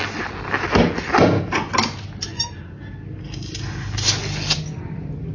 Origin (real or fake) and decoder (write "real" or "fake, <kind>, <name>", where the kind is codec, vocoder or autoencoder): real